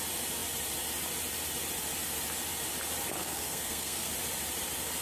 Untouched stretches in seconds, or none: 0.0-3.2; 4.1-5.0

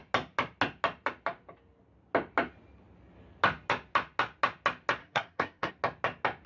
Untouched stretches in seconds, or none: 0.0-5.0; 5.7-6.5

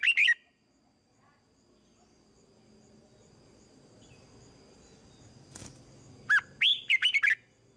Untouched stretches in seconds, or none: 0.0-7.8

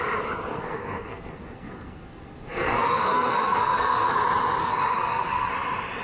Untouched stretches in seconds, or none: 0.0-0.5; 4.1-4.6; 5.5-6.0

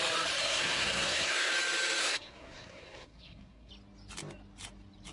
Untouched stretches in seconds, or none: 0.0-0.4; 1.5-2.0; 3.7-5.1